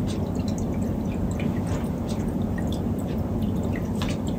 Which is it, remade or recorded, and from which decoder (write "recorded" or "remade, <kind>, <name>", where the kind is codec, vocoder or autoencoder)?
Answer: recorded